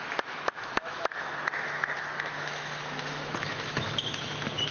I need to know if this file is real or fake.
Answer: fake